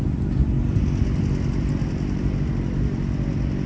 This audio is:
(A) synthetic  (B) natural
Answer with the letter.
B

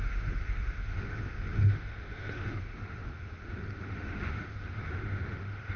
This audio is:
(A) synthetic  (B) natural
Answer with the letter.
A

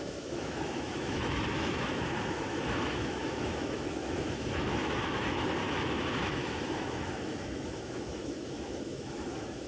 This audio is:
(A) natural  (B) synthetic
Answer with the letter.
B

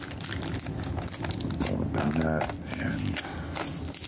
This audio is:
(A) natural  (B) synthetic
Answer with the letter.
A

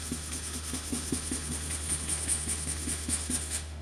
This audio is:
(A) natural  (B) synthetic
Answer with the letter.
B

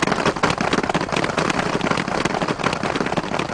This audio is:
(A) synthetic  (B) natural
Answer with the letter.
B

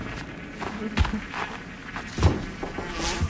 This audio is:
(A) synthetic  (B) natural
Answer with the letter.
B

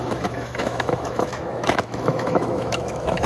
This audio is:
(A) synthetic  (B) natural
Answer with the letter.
A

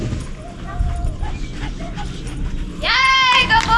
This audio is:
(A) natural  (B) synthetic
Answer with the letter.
A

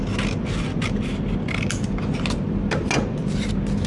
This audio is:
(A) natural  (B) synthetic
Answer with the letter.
A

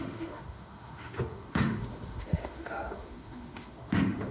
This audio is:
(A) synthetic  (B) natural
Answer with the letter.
A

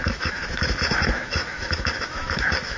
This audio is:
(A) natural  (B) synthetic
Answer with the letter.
B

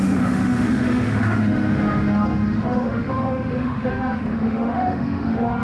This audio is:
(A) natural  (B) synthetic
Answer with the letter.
B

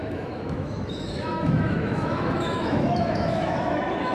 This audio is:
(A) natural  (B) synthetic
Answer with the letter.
B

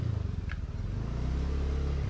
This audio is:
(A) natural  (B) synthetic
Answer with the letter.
A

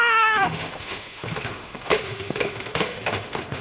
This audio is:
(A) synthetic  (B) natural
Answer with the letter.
A